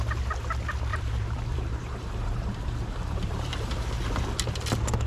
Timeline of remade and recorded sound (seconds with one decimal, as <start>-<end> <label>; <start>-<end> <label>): 0.0-0.9 recorded; 0.9-4.0 remade; 4.0-5.1 recorded